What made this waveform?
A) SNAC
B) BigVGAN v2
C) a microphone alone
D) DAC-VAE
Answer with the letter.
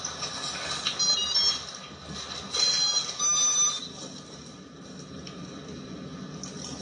C